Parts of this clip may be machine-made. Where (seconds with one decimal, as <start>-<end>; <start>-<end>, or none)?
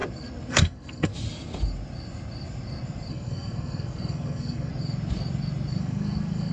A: 0.5-1.1; 3.1-4.7; 5.7-6.5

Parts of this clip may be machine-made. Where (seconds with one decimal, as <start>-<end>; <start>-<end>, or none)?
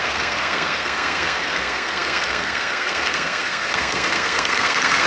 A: 0.0-5.1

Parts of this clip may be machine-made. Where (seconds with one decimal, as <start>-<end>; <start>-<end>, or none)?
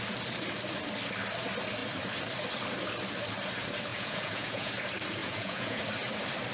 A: 3.9-4.7; 5.2-5.8